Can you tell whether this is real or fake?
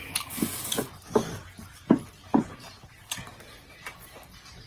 real